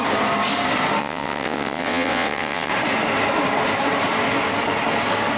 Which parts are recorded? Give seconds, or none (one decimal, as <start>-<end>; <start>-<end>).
0.0-1.0; 2.7-5.4